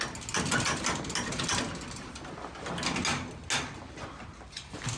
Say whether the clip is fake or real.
real